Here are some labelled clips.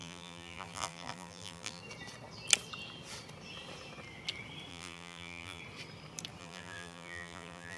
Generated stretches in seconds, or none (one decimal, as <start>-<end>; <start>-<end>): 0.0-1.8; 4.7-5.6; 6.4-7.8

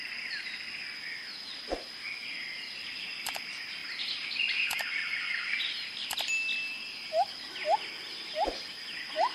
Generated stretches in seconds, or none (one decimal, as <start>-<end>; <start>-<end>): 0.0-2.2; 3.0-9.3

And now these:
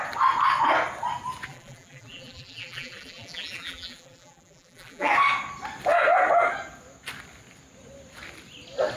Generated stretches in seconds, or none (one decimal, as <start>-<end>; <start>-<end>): 1.5-5.1